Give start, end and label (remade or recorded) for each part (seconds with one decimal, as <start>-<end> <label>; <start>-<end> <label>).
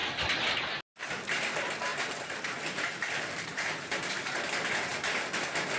0.0-1.9 recorded; 1.9-4.2 remade; 4.2-5.8 recorded